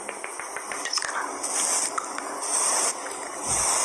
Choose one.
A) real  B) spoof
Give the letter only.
A